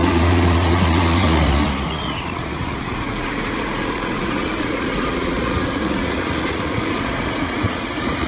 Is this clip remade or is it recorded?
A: remade